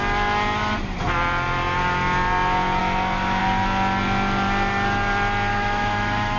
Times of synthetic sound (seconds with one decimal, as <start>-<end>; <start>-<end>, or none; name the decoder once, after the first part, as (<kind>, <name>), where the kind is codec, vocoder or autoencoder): 2.8-3.4 (autoencoder, DAC-VAE); 5.5-6.4